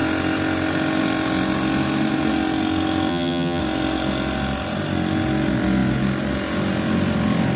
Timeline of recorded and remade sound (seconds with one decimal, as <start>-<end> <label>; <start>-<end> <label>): 0.0-3.1 recorded; 3.1-3.6 remade; 3.6-7.6 recorded